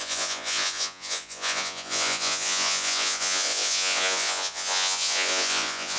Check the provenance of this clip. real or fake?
fake